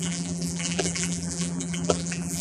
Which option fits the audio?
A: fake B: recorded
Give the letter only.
A